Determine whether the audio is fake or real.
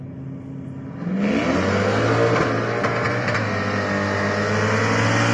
real